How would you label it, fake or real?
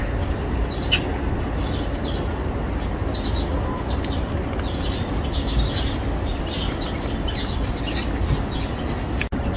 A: real